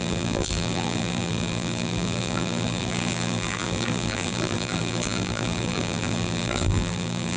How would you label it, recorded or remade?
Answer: remade